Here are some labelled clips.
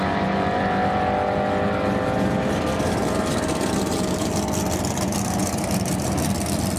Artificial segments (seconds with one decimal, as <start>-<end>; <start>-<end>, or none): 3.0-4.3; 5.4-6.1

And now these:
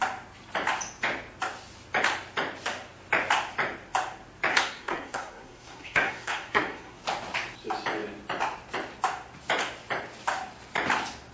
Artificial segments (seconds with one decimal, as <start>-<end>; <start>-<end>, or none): 4.5-7.0

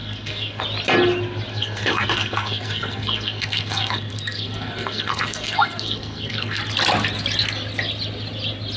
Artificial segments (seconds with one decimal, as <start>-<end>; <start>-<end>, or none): 0.0-0.6; 1.5-6.6

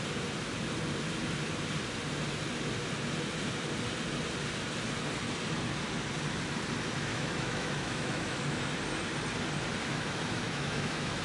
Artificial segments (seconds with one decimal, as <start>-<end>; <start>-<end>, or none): 7.1-8.6; 9.9-11.2

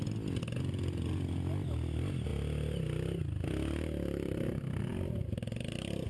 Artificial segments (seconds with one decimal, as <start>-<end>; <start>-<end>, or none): none